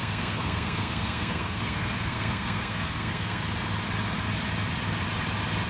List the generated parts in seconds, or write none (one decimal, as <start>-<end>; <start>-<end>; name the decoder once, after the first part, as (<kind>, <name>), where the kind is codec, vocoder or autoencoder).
0.0-3.4 (codec, SNAC)